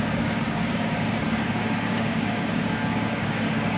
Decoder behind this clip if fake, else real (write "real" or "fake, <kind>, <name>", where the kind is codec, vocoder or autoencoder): fake, codec, DAC